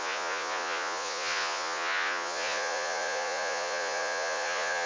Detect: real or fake fake